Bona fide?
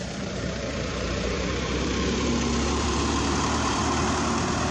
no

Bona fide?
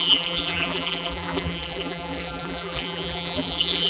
no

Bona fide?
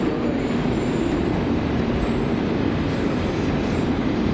no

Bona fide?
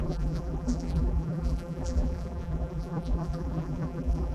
no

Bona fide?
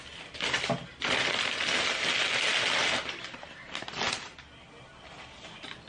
yes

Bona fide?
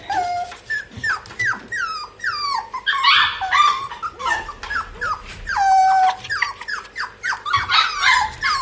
yes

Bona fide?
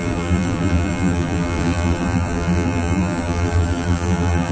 no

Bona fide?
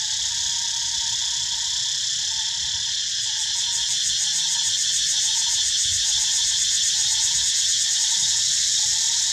yes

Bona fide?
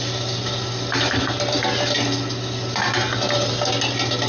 yes